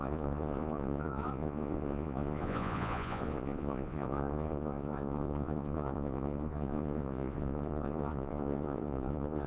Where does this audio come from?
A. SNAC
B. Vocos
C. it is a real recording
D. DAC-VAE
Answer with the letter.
B